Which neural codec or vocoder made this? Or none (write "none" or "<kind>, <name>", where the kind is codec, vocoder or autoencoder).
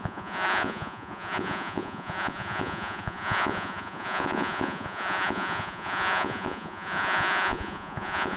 vocoder, Vocos